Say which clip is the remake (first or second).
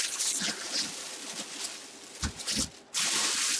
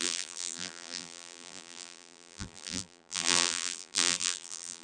second